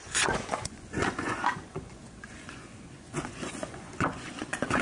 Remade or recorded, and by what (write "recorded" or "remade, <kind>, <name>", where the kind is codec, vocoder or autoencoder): remade, vocoder, Vocos